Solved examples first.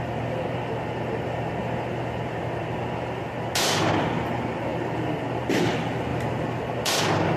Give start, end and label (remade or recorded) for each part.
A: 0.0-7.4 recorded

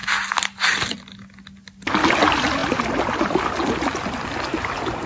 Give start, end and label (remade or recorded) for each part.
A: 0.0-5.1 recorded

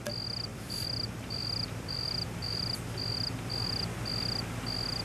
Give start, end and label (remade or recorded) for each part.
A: 0.0-0.5 recorded; 0.5-3.5 remade; 3.5-5.0 recorded

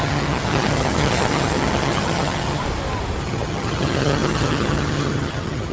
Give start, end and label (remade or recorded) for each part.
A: 0.0-2.6 remade; 2.6-3.2 recorded; 3.2-5.7 remade